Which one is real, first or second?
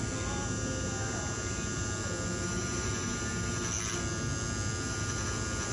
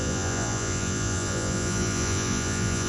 first